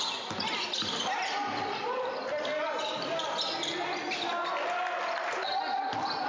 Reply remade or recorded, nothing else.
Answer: recorded